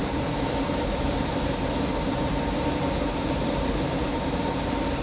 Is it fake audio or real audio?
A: fake